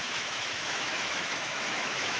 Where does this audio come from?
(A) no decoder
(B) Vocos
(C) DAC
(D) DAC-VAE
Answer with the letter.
D